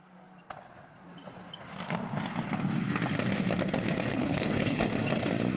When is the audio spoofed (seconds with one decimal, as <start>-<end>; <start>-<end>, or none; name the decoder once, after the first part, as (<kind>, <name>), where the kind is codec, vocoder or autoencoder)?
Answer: 4.1-4.8 (codec, HILCodec)